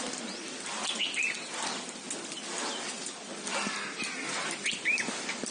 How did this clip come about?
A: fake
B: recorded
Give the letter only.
B